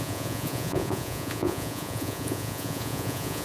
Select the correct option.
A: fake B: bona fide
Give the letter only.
A